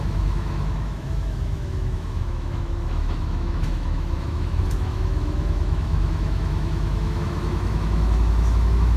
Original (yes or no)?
no